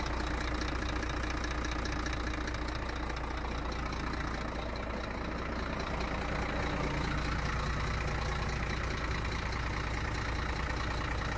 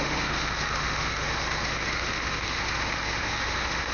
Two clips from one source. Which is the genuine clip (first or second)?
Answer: first